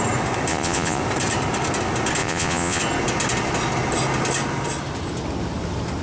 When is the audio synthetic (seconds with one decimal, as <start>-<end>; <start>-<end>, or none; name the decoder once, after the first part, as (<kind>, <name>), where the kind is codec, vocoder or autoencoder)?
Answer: 0.5-1.0 (vocoder, Vocos); 2.2-2.8